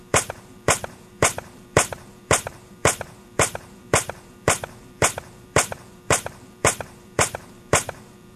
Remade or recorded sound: remade